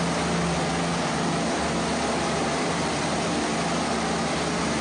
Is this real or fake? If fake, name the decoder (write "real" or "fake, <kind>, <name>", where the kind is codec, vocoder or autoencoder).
real